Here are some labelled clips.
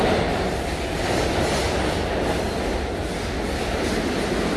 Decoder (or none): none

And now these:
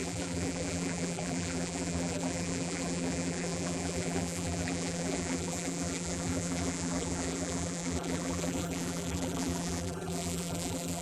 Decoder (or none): vocoder, BigVGAN v2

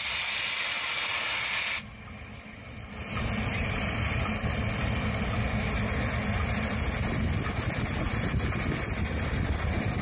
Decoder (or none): none